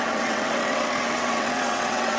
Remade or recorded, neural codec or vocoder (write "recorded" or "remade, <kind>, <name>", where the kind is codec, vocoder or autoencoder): remade, vocoder, WaveNeXt